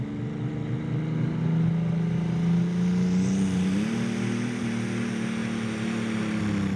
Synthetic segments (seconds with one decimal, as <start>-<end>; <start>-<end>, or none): none